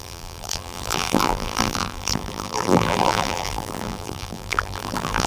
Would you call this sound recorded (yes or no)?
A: no